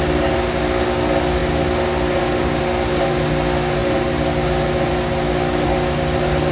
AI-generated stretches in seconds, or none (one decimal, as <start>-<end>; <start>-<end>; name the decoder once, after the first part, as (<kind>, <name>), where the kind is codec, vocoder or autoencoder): none